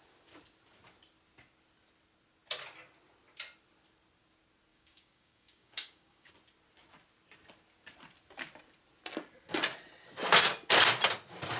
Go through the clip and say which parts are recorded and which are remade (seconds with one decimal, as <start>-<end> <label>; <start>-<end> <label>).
0.0-4.7 recorded; 4.7-6.3 remade; 6.3-11.6 recorded